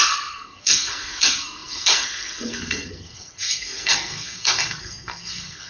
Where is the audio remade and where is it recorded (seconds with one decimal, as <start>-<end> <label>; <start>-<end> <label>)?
0.0-5.7 remade